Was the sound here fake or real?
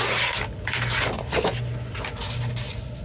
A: real